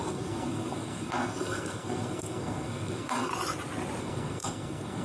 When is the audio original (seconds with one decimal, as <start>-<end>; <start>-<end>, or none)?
3.3-4.0

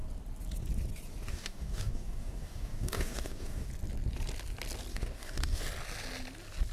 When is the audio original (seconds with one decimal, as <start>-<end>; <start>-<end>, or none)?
0.0-1.3; 3.7-4.9; 5.6-6.7

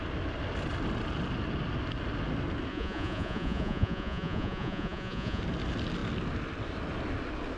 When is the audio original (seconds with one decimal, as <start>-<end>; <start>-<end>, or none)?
0.0-2.7; 5.4-7.6